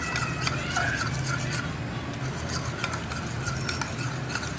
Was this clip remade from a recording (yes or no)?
no